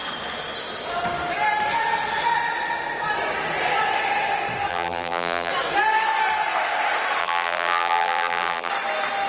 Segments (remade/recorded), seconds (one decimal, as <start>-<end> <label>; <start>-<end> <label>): 0.0-4.7 recorded; 4.7-5.5 remade; 5.5-7.2 recorded; 7.2-8.7 remade; 8.7-9.3 recorded